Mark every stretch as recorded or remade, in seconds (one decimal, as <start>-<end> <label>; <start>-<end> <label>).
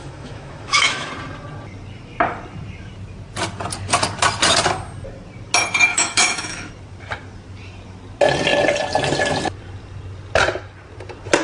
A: 0.0-1.1 remade; 1.1-5.9 recorded; 5.9-6.7 remade; 6.7-11.4 recorded